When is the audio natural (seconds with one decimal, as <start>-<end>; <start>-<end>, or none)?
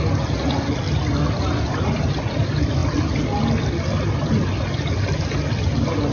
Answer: 0.0-6.1